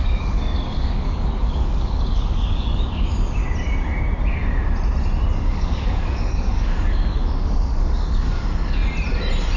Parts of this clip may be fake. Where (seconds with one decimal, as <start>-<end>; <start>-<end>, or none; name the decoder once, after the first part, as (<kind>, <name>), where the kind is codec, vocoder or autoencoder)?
0.0-3.4 (codec, DAC); 5.4-8.8